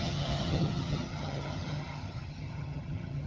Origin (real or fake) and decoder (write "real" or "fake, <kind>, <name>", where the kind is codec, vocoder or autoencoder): fake, vocoder, HiFi-GAN